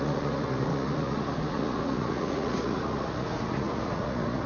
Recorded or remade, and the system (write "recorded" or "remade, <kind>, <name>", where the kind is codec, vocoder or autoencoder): remade, vocoder, Vocos